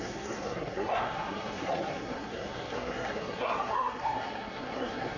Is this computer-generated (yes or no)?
yes